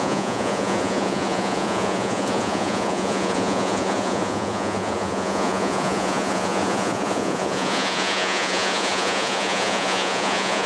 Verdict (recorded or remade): remade